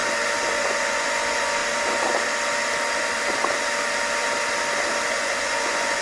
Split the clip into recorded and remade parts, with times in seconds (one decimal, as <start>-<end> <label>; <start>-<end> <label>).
0.0-0.5 recorded; 0.5-1.6 remade; 1.6-5.1 recorded; 5.1-6.0 remade